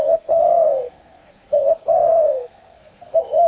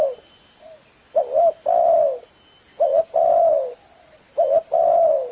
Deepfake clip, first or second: first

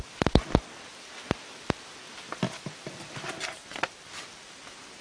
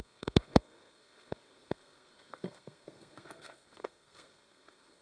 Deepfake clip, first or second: second